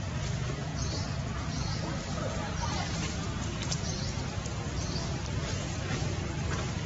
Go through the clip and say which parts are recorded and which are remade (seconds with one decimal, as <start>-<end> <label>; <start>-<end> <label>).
0.0-6.9 recorded